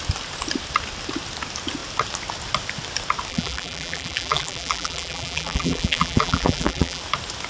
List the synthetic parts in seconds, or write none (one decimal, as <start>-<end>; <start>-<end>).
3.3-7.0

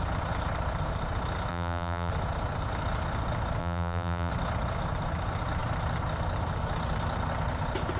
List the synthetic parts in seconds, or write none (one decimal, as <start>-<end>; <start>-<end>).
1.5-2.1; 3.6-4.3